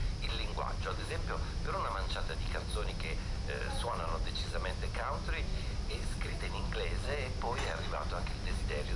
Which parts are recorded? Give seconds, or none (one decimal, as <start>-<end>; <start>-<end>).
1.1-5.5; 6.4-9.0